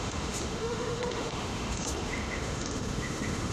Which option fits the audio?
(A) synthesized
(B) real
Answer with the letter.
A